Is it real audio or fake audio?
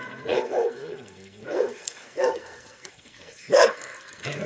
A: fake